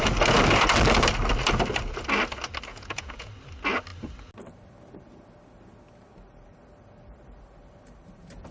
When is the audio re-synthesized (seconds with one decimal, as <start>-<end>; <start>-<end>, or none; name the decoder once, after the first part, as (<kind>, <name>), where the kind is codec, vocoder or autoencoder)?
2.7-3.3 (vocoder, Vocos)